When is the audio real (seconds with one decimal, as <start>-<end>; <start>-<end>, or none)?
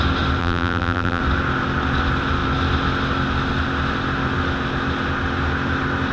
0.0-0.4; 1.2-6.1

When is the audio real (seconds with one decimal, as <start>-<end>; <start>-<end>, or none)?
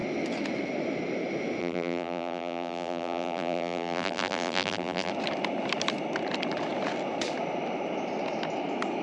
0.0-1.6; 5.1-9.0